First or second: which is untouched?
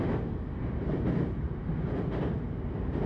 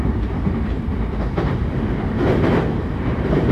first